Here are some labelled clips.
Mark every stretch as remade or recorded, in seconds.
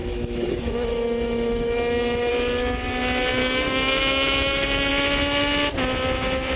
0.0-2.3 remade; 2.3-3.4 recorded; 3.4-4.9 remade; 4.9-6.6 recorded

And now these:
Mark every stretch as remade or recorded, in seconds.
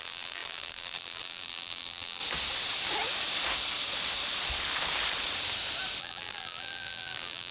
0.0-2.2 remade; 2.2-6.0 recorded; 6.0-7.5 remade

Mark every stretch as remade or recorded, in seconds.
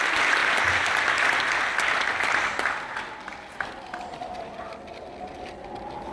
0.0-6.1 recorded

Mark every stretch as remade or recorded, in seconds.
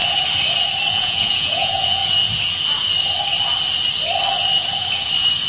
0.0-0.9 recorded; 0.9-2.0 remade; 2.0-5.5 recorded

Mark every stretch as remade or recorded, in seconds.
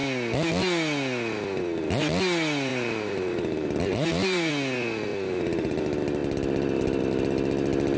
0.0-2.7 recorded; 2.7-4.5 remade; 4.5-5.1 recorded; 5.1-5.8 remade; 5.8-8.0 recorded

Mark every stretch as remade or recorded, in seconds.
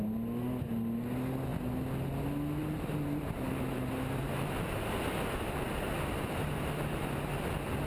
0.0-2.6 recorded; 2.6-5.3 remade; 5.3-7.9 recorded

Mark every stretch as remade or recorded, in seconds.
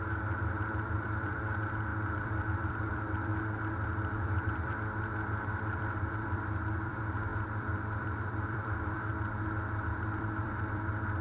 0.0-3.3 remade; 3.3-4.1 recorded; 4.1-9.1 remade; 9.1-9.8 recorded; 9.8-11.2 remade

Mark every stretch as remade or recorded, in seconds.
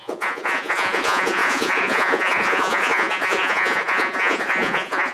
0.0-5.1 remade